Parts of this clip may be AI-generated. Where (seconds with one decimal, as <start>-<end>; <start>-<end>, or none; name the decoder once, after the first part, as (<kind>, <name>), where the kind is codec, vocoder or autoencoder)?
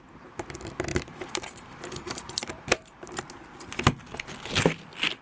0.9-3.2 (vocoder, BigVGAN v2)